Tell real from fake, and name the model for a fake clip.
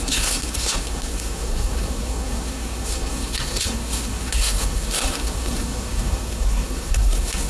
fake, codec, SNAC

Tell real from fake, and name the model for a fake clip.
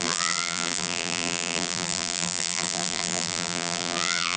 fake, vocoder, BigVGAN v2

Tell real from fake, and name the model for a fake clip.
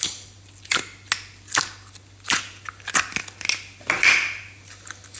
real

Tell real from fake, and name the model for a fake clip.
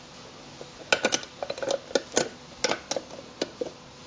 real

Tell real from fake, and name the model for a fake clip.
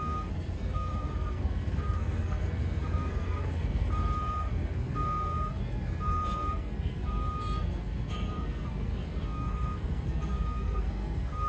fake, codec, SNAC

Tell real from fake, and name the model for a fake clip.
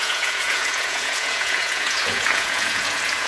fake, vocoder, Vocos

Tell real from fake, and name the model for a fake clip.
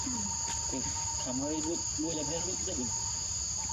real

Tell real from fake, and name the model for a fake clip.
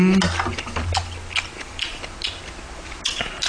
real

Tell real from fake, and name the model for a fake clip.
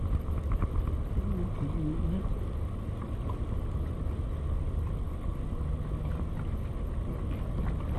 real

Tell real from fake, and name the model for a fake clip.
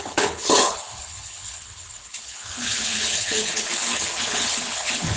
fake, codec, HILCodec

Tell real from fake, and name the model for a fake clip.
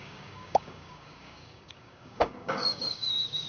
fake, codec, DAC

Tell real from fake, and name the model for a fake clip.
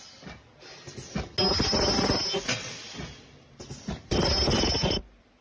real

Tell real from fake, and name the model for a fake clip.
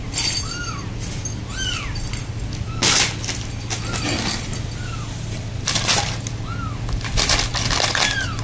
real